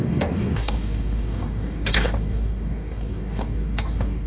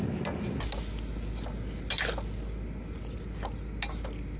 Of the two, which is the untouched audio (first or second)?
second